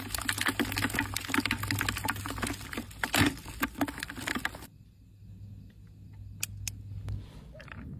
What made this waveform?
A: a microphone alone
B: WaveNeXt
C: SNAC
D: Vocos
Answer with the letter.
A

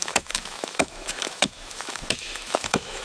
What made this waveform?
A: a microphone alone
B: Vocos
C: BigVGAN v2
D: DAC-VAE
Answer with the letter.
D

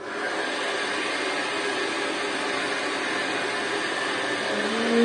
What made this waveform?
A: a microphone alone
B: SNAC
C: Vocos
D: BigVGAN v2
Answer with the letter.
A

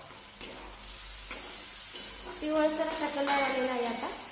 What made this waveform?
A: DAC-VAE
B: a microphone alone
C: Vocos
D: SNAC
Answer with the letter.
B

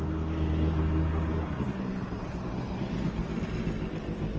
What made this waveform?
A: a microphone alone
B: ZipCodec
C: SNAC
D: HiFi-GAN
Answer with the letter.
A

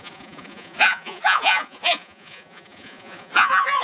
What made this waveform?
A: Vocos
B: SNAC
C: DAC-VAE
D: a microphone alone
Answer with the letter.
A